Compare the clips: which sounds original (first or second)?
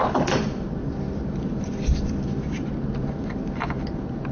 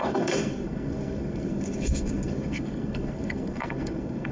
first